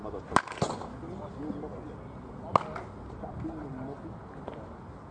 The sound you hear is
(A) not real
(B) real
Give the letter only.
B